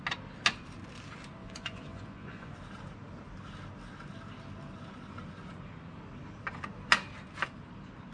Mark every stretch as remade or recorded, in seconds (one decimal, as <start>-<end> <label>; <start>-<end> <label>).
0.0-1.4 recorded; 1.4-2.5 remade; 2.5-8.1 recorded